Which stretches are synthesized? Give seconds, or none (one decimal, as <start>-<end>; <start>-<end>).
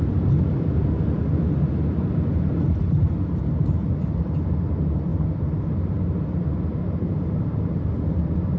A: none